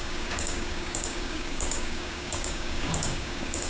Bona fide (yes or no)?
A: no